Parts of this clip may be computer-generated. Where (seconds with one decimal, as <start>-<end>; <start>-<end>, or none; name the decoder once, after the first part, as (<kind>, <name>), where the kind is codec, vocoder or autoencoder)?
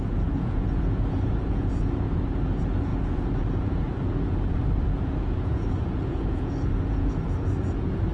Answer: 0.0-8.1 (vocoder, Vocos)